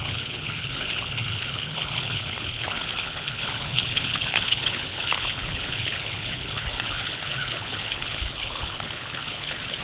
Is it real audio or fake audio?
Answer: fake